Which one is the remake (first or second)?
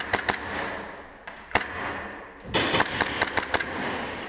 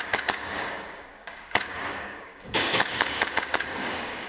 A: second